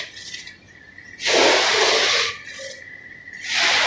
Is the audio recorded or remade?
recorded